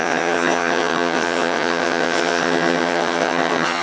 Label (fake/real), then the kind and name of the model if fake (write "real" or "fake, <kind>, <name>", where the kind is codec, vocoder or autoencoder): fake, vocoder, HiFi-GAN